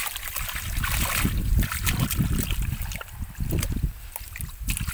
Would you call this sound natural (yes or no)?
yes